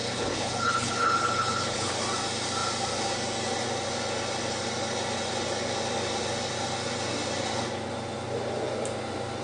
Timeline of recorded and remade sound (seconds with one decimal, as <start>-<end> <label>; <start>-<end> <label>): 0.0-1.9 remade; 1.9-9.4 recorded